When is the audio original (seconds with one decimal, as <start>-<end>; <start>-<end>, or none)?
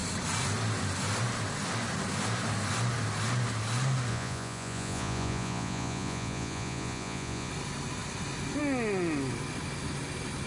0.0-4.1; 7.5-10.5